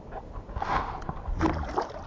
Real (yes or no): yes